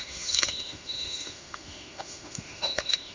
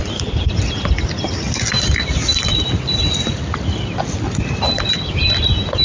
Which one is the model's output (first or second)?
first